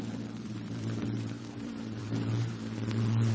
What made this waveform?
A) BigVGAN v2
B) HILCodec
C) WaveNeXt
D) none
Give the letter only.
A